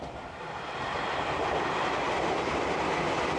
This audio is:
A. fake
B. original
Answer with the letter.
A